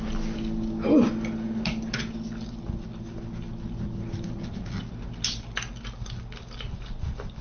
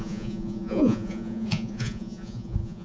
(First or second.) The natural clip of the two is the first